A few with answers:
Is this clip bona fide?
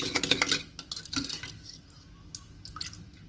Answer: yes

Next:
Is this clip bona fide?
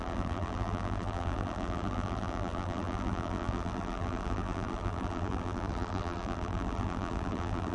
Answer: no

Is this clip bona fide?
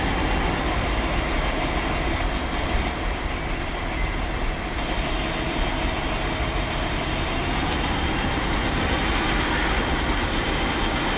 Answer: yes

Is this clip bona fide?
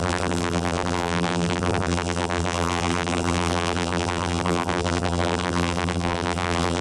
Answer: no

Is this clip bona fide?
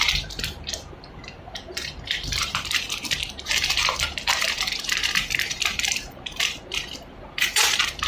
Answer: no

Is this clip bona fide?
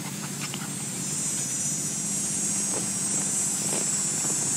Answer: no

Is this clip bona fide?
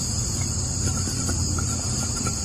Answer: no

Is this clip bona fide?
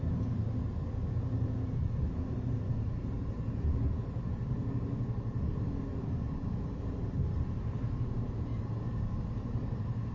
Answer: no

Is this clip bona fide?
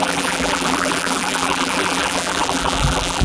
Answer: no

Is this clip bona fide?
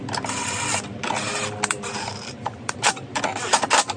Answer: yes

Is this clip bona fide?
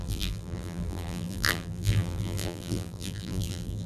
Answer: no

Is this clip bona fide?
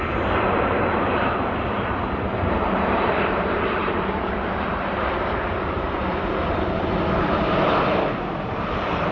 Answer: no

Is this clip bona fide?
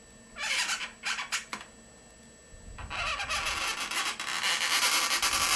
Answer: yes